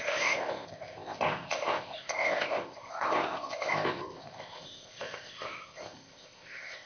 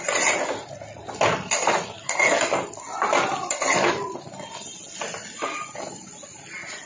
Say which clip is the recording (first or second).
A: second